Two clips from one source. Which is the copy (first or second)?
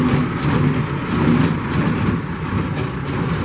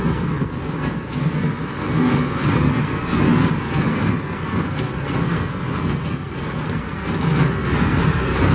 second